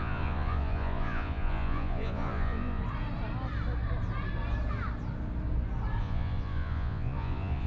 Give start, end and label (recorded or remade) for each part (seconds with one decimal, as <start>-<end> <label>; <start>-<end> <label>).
0.0-2.8 remade; 2.8-6.0 recorded; 6.0-7.7 remade

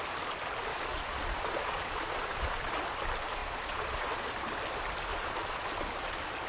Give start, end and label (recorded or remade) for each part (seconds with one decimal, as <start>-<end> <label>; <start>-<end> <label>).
0.0-0.7 recorded; 0.7-2.5 remade; 2.5-3.4 recorded; 3.4-4.3 remade; 4.3-5.1 recorded; 5.1-5.7 remade; 5.7-6.5 recorded

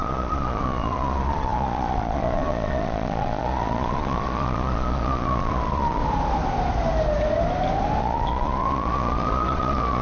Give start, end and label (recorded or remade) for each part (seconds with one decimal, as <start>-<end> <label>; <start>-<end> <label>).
0.0-6.0 remade; 6.0-8.0 recorded; 8.0-10.0 remade

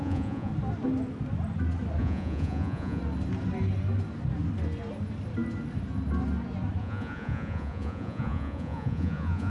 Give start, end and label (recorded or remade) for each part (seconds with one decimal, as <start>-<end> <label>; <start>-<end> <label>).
0.0-0.5 remade; 0.5-2.0 recorded; 2.0-3.0 remade; 3.0-6.8 recorded; 6.8-9.5 remade

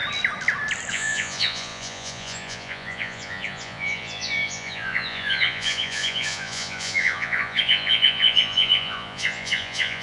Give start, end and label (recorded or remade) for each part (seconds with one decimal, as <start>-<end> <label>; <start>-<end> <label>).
0.0-0.9 recorded; 0.9-10.0 remade

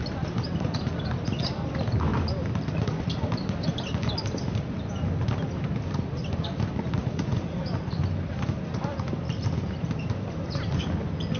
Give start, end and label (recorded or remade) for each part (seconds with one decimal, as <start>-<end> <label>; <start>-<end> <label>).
0.0-7.0 recorded; 7.0-7.6 remade; 7.6-11.4 recorded

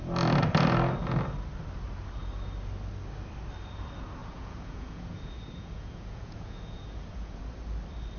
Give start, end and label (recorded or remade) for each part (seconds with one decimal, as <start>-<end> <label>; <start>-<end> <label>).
0.0-4.2 recorded; 4.2-7.4 remade; 7.4-8.2 recorded

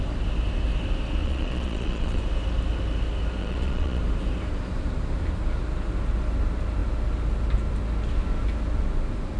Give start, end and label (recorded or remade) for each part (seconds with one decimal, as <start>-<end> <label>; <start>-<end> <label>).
0.0-1.2 recorded; 1.2-2.2 remade; 2.2-3.4 recorded; 3.4-4.0 remade; 4.0-9.4 recorded